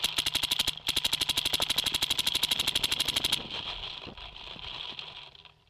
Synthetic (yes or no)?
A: no